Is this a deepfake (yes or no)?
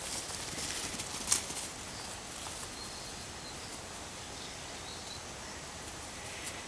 no